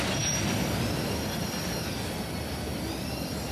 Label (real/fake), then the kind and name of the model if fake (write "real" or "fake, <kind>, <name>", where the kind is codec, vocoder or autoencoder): real